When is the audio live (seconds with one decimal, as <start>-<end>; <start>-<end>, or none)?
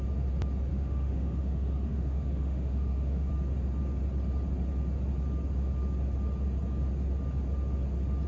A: 0.0-0.7; 3.3-8.3